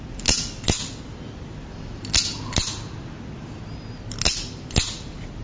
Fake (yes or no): no